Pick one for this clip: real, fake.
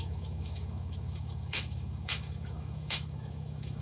fake